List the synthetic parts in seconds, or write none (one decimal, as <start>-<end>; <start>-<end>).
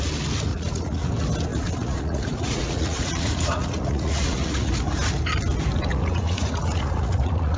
0.5-1.1; 1.5-4.7; 5.9-7.6